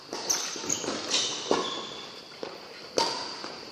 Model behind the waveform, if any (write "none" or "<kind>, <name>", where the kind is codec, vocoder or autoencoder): none